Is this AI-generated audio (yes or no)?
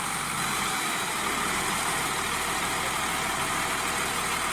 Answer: no